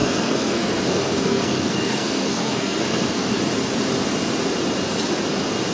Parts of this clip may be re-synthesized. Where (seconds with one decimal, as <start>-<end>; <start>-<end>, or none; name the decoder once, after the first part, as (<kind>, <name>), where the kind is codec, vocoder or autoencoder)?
0.0-3.4 (codec, SNAC)